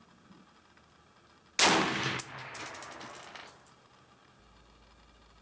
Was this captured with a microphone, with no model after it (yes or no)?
yes